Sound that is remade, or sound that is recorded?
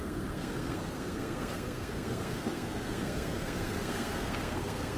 remade